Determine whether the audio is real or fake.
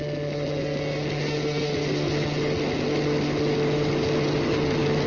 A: real